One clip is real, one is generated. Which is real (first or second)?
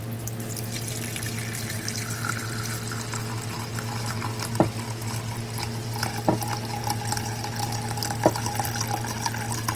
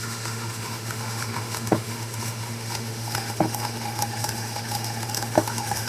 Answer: first